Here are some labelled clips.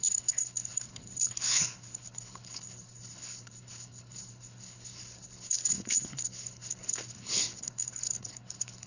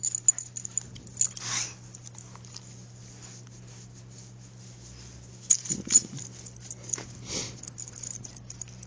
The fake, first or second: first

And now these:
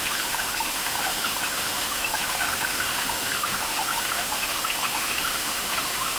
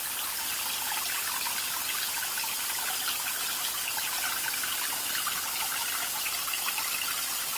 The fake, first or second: first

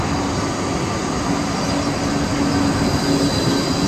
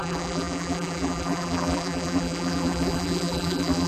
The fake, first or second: second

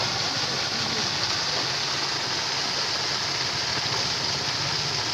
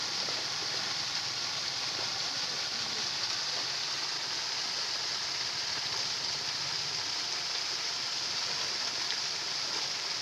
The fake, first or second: second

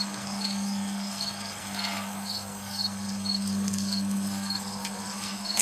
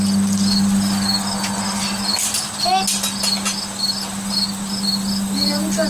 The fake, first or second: first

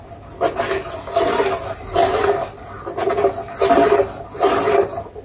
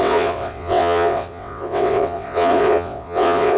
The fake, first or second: second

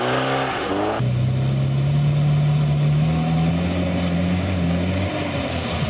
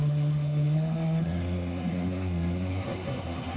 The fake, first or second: second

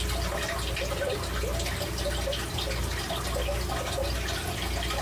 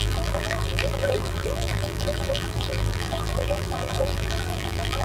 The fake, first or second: second